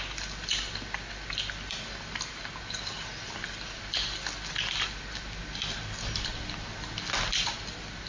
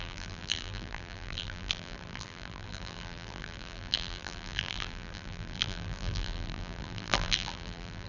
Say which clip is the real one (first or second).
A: first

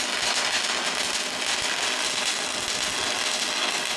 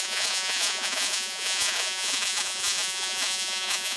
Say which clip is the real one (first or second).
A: first